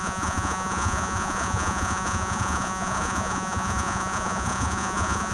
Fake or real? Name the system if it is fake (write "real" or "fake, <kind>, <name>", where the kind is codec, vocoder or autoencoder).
fake, vocoder, Vocos